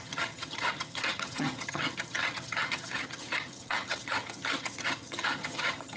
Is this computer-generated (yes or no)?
yes